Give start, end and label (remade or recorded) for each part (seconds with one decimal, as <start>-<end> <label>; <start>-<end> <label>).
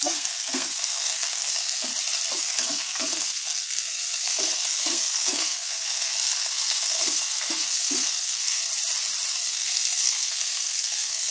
0.0-1.9 remade; 1.9-2.4 recorded; 2.4-8.7 remade; 8.7-9.3 recorded; 9.3-11.3 remade